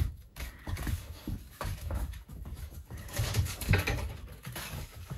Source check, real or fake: fake